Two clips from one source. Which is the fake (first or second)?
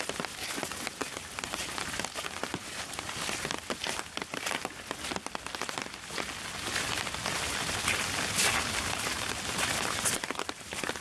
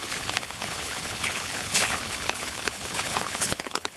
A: second